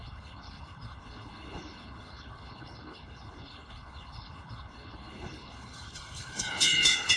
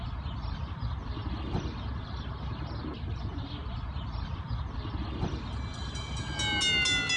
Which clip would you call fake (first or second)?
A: first